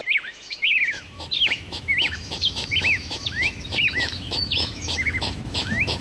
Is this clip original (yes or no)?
no